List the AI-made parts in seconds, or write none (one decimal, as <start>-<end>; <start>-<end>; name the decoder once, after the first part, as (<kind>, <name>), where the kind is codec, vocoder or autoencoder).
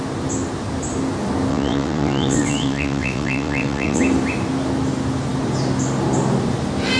1.5-4.0 (vocoder, WaveNeXt)